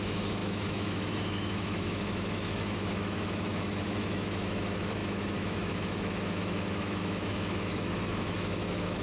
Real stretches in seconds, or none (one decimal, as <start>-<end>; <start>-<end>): none